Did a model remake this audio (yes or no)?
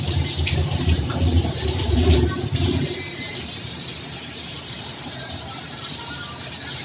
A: yes